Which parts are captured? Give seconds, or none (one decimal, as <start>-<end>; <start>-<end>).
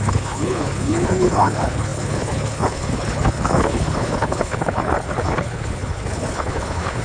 none